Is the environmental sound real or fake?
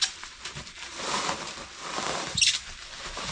real